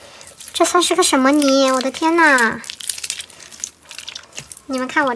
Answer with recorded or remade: recorded